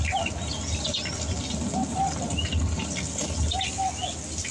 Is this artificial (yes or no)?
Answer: no